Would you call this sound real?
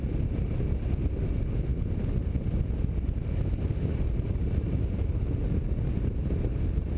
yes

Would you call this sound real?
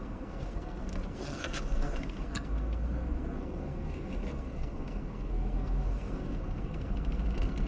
no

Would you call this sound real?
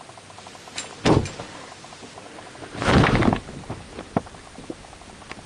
yes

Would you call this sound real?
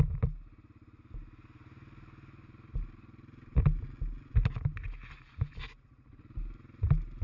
yes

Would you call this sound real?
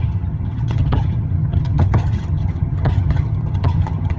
no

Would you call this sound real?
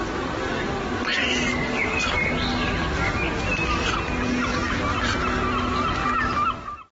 yes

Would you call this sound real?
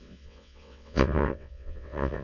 no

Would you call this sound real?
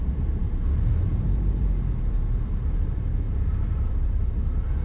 no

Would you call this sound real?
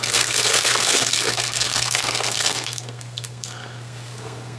no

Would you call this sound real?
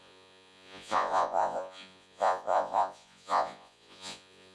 no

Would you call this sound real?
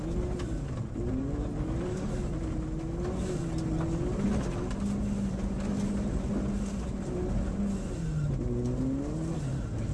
yes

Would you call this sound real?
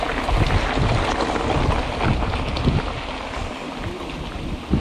yes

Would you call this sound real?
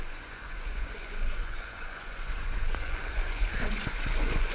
no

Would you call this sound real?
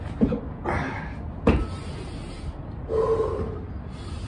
yes